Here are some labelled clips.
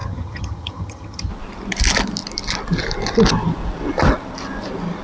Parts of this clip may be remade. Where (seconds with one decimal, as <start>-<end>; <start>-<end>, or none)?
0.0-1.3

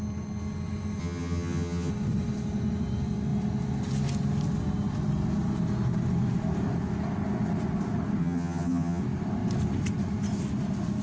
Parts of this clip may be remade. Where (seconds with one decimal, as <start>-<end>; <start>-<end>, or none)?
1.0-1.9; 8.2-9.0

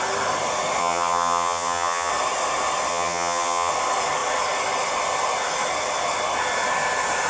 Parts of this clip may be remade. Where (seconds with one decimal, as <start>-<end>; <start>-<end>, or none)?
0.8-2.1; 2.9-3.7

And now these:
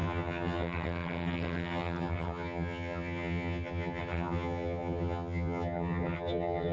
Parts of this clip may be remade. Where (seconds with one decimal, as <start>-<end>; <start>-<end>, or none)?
0.0-6.7